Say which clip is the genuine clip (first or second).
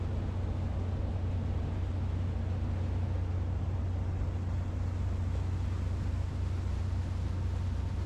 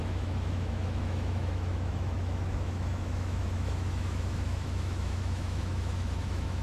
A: first